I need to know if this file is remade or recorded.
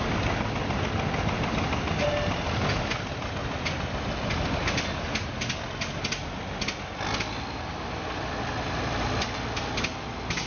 recorded